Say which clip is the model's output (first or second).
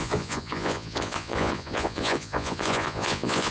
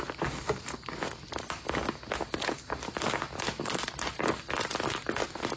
first